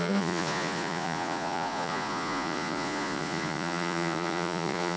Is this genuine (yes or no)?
no